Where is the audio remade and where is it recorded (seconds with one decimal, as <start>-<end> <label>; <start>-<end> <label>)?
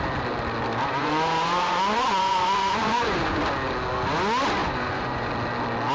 0.0-1.0 recorded; 1.0-3.4 remade; 3.4-4.6 recorded; 4.6-5.3 remade; 5.3-5.9 recorded